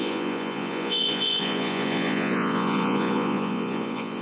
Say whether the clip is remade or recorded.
remade